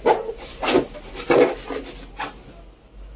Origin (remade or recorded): recorded